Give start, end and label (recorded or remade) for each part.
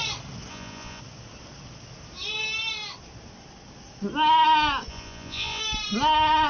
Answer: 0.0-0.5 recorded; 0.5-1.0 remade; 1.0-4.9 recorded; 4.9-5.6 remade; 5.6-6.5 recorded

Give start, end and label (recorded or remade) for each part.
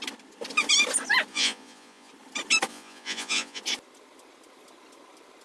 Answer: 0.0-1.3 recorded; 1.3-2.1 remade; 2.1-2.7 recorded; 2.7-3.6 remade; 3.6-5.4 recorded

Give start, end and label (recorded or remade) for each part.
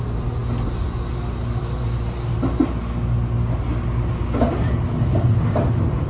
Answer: 0.0-6.1 recorded